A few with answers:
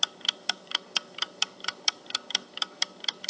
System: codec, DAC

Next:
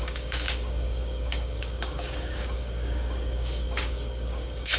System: codec, DAC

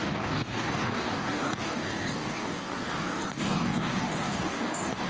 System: codec, DAC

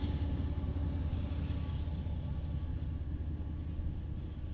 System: none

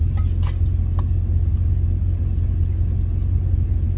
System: none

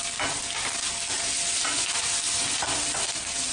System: none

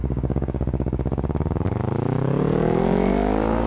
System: codec, DAC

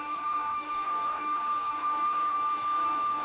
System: codec, DAC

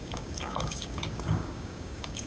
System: codec, DAC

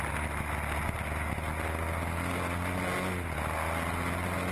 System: none